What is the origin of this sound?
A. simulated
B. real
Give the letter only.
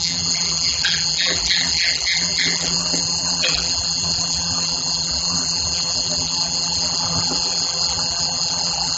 A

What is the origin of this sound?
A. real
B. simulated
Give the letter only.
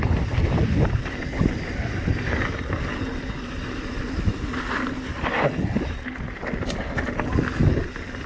A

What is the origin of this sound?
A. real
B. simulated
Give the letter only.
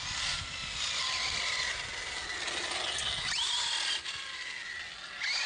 A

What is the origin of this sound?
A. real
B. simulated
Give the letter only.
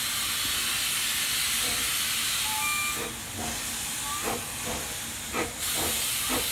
A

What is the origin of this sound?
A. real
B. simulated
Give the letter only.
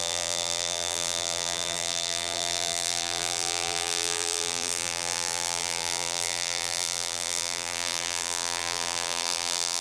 B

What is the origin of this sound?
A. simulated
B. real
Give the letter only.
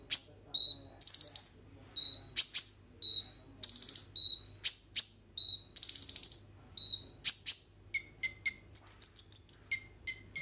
B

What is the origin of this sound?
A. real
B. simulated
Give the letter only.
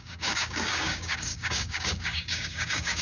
B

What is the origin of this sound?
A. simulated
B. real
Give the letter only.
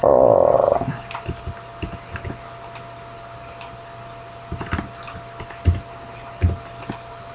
B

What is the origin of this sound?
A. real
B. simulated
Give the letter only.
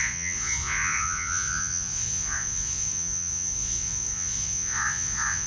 B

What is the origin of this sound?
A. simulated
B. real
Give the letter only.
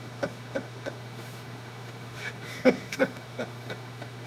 A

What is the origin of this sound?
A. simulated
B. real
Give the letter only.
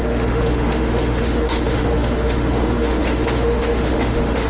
A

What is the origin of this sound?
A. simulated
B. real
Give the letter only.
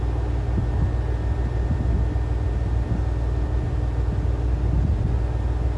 B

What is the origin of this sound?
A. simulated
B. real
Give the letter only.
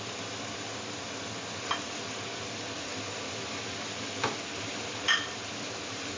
B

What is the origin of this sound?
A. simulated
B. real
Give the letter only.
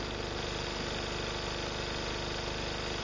B